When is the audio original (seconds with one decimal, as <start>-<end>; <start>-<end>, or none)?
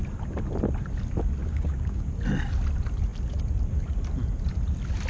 0.0-1.4; 2.1-5.1